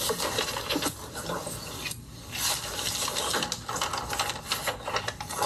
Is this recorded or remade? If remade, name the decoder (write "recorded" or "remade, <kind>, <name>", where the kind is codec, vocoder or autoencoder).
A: recorded